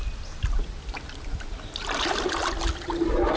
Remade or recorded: recorded